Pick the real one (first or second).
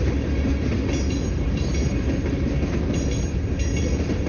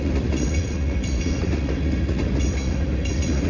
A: first